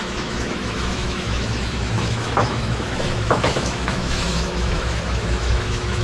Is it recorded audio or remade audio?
remade